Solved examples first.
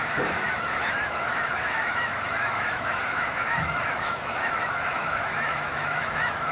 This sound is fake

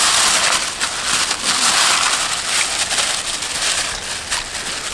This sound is real